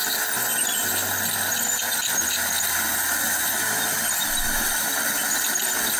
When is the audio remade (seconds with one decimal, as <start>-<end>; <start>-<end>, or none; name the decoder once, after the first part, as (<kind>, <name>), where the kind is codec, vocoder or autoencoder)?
none